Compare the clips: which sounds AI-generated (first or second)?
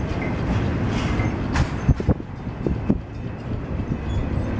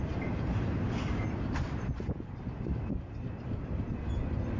second